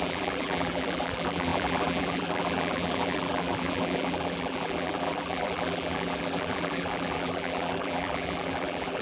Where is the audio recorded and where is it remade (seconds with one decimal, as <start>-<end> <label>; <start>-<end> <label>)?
0.0-9.0 remade